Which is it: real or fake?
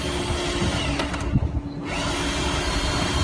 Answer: real